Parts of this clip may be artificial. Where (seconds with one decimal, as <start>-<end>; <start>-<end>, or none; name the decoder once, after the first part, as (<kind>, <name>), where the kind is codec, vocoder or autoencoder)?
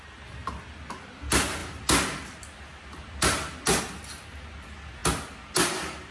none